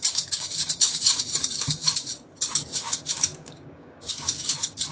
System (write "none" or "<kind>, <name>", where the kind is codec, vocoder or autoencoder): codec, DAC